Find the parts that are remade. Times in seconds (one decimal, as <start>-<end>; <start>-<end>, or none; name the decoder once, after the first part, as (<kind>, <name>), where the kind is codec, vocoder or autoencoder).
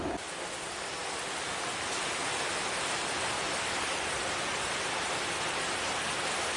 none